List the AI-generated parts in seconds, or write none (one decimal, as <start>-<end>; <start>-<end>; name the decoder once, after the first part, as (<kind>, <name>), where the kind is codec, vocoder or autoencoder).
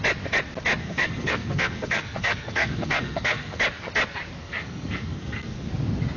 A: 0.8-3.6 (codec, SNAC); 4.4-5.7